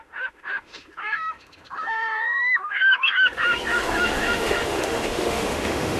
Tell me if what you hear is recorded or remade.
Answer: remade